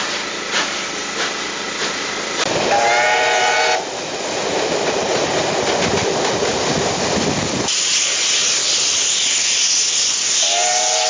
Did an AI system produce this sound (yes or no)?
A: no